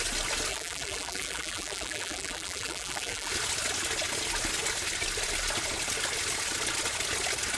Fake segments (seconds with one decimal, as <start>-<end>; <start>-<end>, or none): 0.5-3.3